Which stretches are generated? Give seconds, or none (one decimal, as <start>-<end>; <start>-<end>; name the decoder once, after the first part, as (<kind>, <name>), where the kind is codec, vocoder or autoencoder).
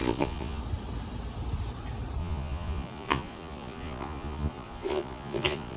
0.0-0.6 (vocoder, Vocos); 2.2-5.8